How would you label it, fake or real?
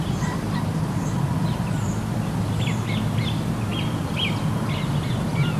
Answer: fake